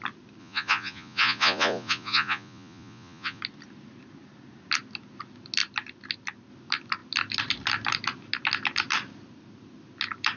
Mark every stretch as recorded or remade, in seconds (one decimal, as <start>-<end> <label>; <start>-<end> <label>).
0.0-0.4 recorded; 0.4-3.4 remade; 3.4-10.4 recorded